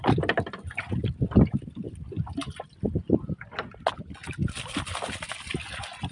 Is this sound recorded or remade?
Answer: recorded